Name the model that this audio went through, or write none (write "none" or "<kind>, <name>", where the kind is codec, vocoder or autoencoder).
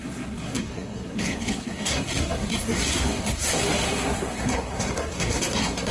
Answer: codec, SNAC